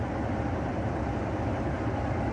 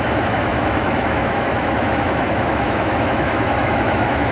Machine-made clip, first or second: second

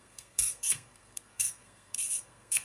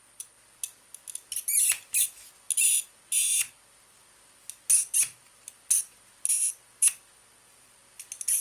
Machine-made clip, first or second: first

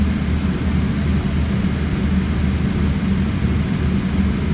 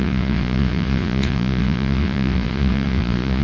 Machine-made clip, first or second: second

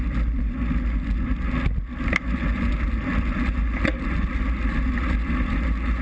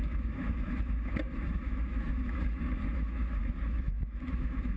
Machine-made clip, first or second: second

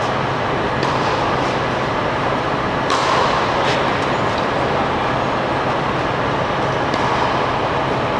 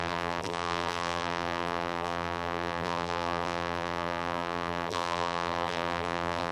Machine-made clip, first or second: second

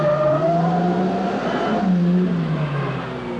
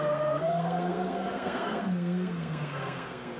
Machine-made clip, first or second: second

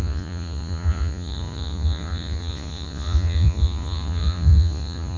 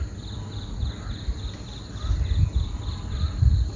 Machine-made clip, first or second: first